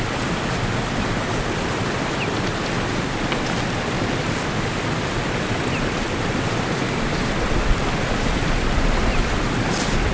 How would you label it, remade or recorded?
recorded